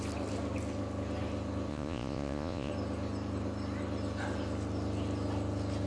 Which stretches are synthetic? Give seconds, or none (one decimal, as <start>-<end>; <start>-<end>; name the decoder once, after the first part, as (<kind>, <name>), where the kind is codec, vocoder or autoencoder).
1.7-2.7 (vocoder, Vocos)